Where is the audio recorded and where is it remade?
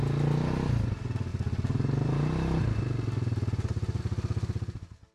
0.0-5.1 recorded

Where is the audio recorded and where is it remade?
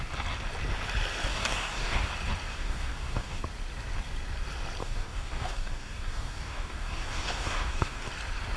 0.0-1.3 recorded; 1.3-2.1 remade; 2.1-2.5 recorded; 2.5-3.4 remade; 3.4-4.8 recorded; 4.8-8.1 remade; 8.1-8.6 recorded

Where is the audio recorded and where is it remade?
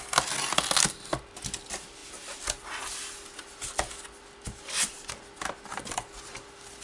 0.0-6.8 recorded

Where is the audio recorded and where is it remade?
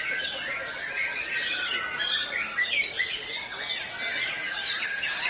0.0-2.6 recorded; 2.6-3.3 remade; 3.3-4.4 recorded; 4.4-5.3 remade